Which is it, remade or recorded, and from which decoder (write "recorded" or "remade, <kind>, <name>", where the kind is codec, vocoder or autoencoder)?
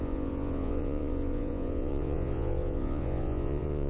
remade, vocoder, Vocos